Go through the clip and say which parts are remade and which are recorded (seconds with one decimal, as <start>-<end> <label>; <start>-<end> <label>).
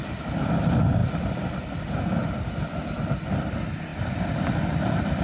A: 0.0-5.2 recorded